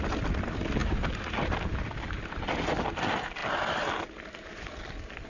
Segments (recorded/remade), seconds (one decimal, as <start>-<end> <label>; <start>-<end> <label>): 0.0-0.8 recorded; 0.8-1.8 remade; 1.8-5.3 recorded